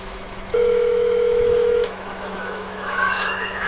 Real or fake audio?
fake